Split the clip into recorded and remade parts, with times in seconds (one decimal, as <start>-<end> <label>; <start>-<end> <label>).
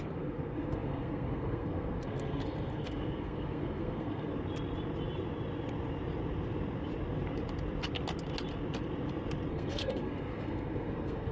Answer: 0.0-4.3 remade; 4.3-9.5 recorded; 9.5-11.3 remade